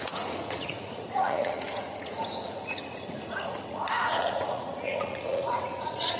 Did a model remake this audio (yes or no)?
yes